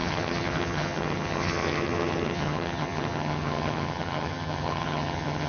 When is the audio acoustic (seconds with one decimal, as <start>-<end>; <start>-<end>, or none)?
none